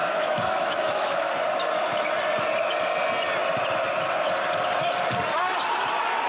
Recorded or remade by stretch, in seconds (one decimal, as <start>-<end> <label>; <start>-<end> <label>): 0.0-1.3 remade; 1.3-6.3 recorded